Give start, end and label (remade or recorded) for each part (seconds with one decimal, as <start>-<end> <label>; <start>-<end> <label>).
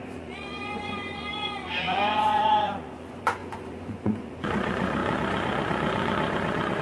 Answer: 0.0-6.8 remade